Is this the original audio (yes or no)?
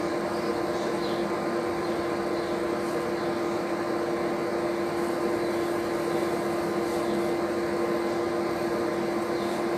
yes